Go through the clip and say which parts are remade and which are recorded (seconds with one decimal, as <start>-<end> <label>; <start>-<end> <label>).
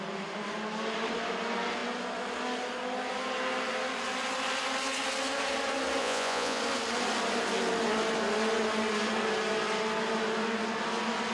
0.0-6.0 recorded; 6.0-6.6 remade; 6.6-11.3 recorded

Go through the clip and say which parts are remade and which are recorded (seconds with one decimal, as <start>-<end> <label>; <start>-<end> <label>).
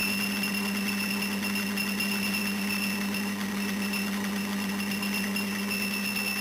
0.0-6.4 recorded